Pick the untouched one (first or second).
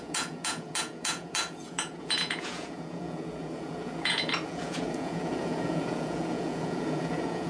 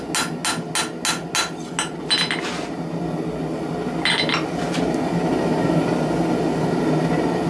second